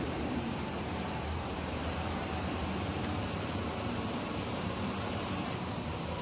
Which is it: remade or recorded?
remade